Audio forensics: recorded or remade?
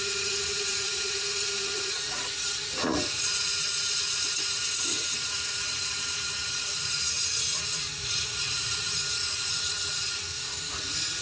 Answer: remade